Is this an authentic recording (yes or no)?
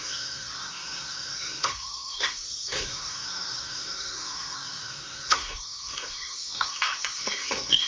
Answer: no